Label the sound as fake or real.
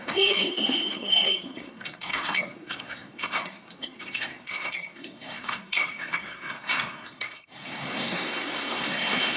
fake